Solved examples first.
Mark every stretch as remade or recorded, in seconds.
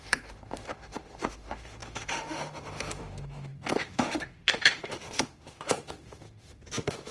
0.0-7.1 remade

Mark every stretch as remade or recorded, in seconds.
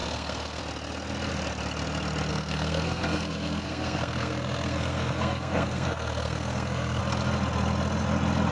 0.0-0.6 remade; 0.6-2.3 recorded; 2.3-7.0 remade; 7.0-8.5 recorded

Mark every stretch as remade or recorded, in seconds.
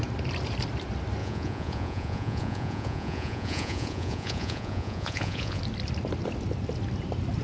0.0-1.2 recorded; 1.2-5.6 remade; 5.6-7.4 recorded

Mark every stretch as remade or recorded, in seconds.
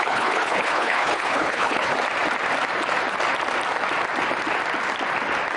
0.0-1.9 remade; 1.9-5.6 recorded